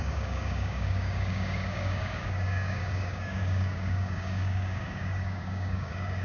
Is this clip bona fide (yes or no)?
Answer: no